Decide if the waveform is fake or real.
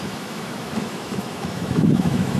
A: fake